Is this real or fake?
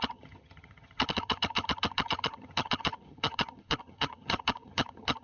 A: fake